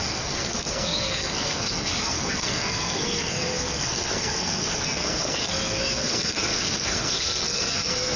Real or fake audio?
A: fake